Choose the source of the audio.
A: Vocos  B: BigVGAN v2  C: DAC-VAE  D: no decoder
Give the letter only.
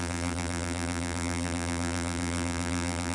B